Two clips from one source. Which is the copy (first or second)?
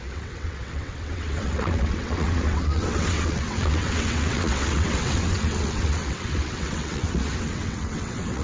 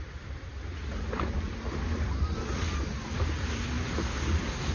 first